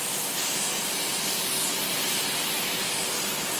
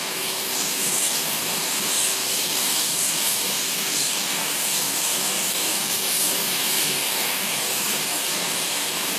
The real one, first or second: first